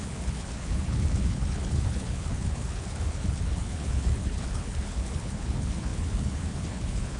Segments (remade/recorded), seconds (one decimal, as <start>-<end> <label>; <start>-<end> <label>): 0.0-7.2 remade